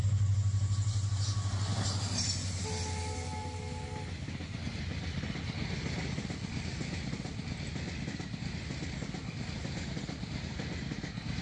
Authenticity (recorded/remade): recorded